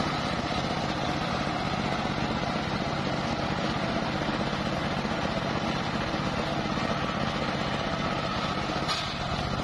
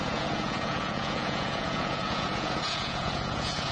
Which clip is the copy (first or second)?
second